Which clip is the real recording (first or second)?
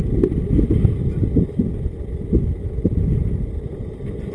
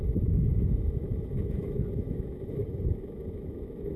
first